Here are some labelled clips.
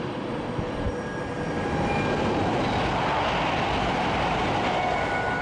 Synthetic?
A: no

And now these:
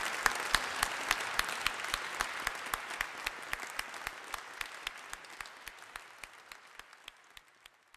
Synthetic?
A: no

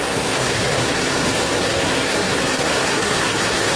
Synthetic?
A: yes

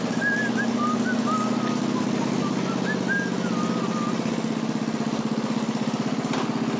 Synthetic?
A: no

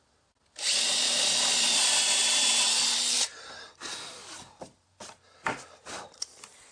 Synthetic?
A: no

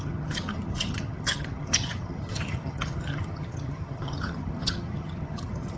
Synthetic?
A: yes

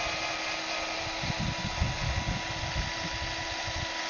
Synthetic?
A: no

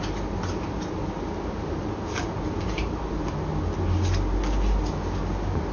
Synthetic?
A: no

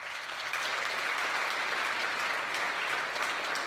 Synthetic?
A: no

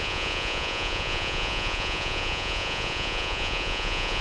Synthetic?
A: yes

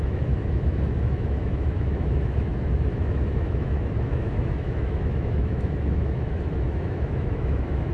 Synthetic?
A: yes